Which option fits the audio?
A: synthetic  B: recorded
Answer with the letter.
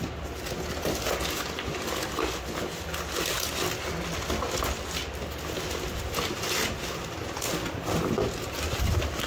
B